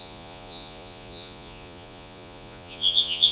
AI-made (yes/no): yes